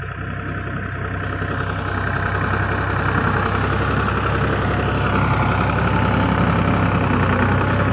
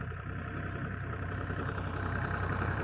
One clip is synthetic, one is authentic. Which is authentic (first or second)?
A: first